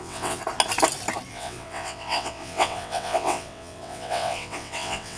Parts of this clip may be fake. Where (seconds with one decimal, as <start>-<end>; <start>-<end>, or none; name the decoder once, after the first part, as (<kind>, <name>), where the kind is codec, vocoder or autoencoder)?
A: 0.0-0.4 (vocoder, WaveNeXt); 1.3-5.2